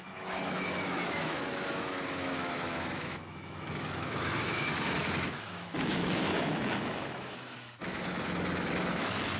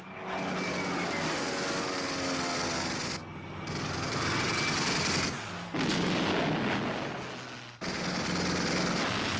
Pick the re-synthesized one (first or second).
first